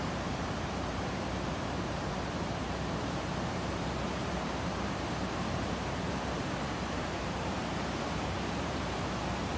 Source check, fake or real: fake